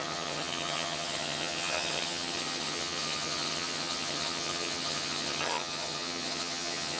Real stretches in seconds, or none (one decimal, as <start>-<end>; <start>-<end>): none